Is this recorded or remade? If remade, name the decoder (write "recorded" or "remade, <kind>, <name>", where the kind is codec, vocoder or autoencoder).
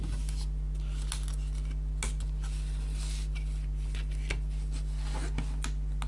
recorded